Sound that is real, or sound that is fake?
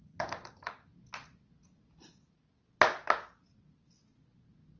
real